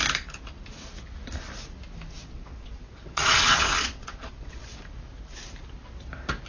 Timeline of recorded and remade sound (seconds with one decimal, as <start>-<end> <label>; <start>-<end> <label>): 0.0-2.1 recorded; 2.1-4.8 remade; 4.8-6.5 recorded